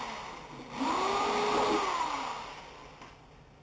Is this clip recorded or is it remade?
recorded